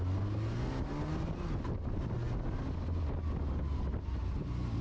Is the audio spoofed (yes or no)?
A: no